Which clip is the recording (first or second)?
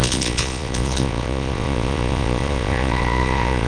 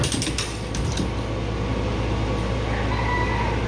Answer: second